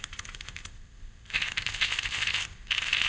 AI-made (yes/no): yes